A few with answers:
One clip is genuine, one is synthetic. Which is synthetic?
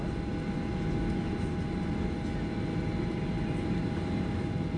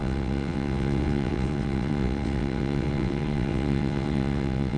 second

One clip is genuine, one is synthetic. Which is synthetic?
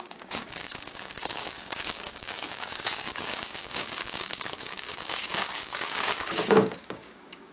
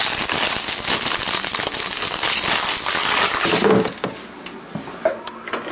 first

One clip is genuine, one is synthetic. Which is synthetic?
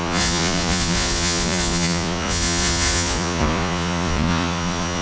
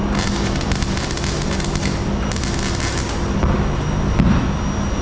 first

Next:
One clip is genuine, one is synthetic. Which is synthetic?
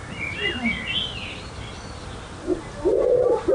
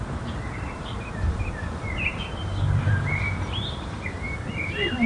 second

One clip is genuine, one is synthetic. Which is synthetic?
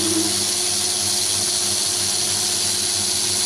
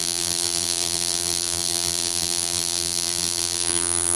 second